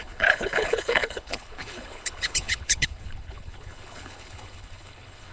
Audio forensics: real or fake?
fake